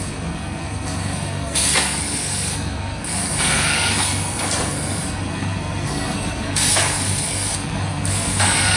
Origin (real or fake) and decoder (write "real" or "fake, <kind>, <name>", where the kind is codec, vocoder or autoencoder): fake, codec, SNAC